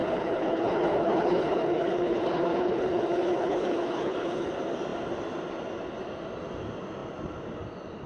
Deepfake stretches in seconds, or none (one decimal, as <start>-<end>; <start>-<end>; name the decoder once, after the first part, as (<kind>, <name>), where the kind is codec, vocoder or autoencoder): 0.0-4.5 (codec, HILCodec)